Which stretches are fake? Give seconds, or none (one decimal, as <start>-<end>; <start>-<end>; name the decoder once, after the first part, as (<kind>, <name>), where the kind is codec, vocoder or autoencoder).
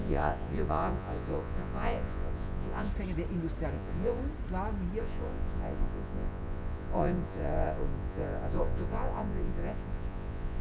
0.0-2.9 (vocoder, Vocos); 3.7-4.2; 5.0-10.6